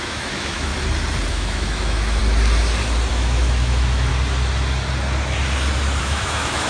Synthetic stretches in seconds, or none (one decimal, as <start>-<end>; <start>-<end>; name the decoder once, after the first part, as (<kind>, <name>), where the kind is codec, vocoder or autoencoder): 0.0-0.7 (autoencoder, DAC-VAE); 1.3-2.2; 3.1-4.1; 6.0-6.7

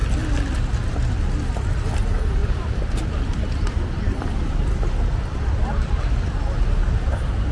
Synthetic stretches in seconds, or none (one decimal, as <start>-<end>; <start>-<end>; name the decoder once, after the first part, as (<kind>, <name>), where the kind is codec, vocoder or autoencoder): 2.4-6.0 (vocoder, BigVGAN v2)

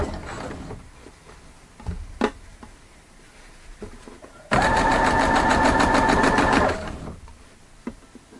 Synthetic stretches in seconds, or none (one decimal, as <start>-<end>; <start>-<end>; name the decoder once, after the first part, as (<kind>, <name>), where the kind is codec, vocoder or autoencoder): 2.5-7.5 (vocoder, BigVGAN v2)

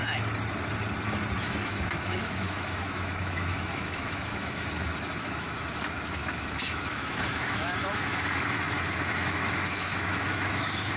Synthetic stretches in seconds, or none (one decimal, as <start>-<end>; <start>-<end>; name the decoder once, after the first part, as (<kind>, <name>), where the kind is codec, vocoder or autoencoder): 1.4-11.0 (autoencoder, DAC-VAE)

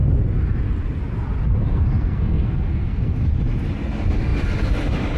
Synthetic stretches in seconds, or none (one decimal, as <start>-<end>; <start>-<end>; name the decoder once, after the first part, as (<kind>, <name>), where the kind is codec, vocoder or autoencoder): 1.7-3.3 (codec, SNAC)

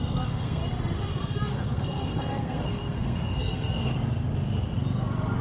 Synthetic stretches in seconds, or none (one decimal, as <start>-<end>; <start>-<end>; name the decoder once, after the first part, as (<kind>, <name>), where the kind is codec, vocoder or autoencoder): 0.0-0.6 (codec, SNAC); 1.2-3.9

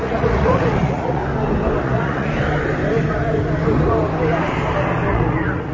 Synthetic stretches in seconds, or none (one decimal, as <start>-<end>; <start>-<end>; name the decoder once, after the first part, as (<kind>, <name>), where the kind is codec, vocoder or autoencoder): 0.0-1.2 (vocoder, Vocos); 1.8-2.3; 5.1-5.7

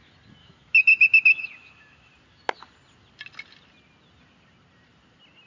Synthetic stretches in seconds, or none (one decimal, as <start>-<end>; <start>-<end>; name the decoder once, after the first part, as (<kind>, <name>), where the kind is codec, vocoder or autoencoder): 0.4-2.1 (autoencoder, DAC-VAE)